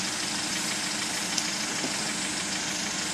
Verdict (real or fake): real